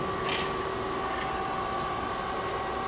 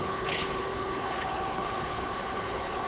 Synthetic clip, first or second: second